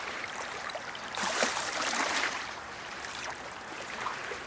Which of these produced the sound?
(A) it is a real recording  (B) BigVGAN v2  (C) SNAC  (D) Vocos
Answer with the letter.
B